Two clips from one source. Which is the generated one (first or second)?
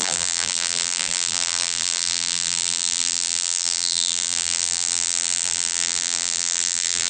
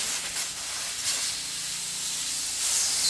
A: first